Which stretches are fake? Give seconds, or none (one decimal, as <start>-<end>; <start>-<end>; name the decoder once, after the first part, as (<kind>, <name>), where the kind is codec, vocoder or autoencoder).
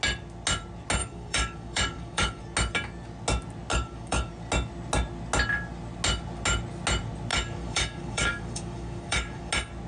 1.0-2.4 (codec, DAC); 3.7-4.3; 7.3-9.5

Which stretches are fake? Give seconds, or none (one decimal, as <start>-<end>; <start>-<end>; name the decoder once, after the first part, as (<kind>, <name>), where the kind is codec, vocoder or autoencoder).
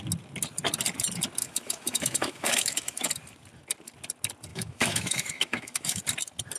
1.4-3.1 (autoencoder, DAC-VAE); 4.5-6.0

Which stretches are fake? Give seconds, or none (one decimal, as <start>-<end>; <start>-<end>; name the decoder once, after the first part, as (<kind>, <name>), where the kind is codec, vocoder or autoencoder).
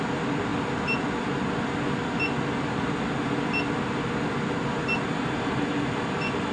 4.8-5.6 (vocoder, BigVGAN v2)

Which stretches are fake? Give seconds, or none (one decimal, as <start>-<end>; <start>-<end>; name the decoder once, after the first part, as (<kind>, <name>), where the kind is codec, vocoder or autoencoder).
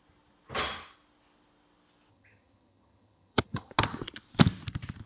2.1-3.7 (vocoder, HiFi-GAN)